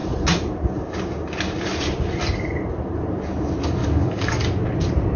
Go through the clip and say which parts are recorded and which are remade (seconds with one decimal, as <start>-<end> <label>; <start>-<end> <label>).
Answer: 0.0-3.8 recorded; 3.8-4.4 remade; 4.4-5.2 recorded